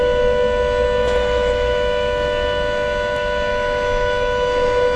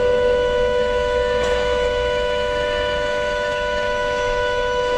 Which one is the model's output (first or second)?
second